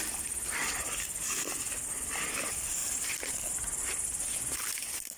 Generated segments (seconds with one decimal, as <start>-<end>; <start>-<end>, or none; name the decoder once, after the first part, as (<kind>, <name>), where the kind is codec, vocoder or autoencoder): 2.8-3.3 (vocoder, BigVGAN v2)

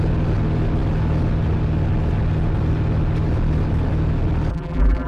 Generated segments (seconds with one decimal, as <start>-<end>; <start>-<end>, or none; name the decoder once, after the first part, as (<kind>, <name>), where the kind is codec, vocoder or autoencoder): 4.5-5.1 (vocoder, BigVGAN v2)

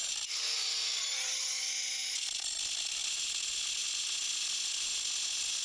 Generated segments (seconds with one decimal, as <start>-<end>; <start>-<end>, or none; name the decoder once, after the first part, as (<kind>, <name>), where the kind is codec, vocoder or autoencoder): none

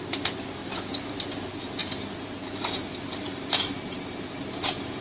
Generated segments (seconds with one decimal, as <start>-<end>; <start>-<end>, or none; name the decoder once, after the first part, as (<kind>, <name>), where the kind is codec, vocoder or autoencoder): 0.0-0.6 (vocoder, BigVGAN v2); 1.1-5.0

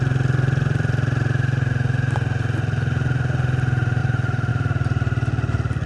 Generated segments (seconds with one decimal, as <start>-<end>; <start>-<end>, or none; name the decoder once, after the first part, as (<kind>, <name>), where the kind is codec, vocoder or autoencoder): 4.0-4.5 (vocoder, BigVGAN v2)

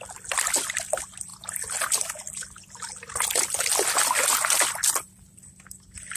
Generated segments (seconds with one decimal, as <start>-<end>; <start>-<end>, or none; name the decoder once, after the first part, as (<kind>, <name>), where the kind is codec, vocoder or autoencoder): none

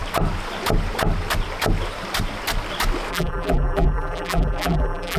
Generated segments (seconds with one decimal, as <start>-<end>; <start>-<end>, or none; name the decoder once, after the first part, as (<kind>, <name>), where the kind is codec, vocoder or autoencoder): 3.1-5.2 (vocoder, BigVGAN v2)